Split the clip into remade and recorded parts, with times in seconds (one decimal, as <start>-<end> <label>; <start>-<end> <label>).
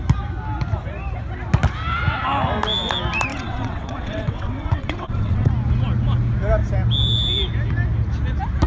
0.0-3.3 recorded; 3.3-5.5 remade; 5.5-8.7 recorded